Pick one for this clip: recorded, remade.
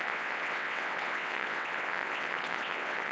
remade